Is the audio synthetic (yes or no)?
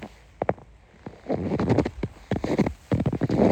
no